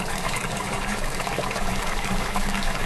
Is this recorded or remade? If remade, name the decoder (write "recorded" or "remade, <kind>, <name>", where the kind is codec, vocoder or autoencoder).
remade, codec, DAC